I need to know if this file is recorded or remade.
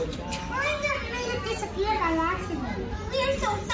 recorded